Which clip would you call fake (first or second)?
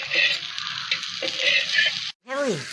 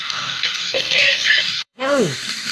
second